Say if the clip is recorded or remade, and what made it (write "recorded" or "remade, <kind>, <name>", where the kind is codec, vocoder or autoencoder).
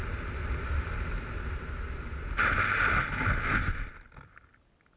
recorded